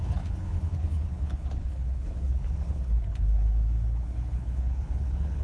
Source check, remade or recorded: remade